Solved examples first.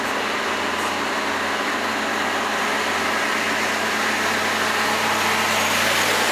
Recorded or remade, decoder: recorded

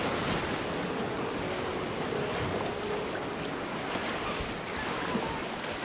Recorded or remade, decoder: recorded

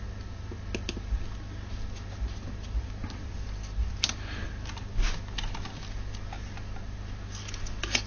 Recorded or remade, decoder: recorded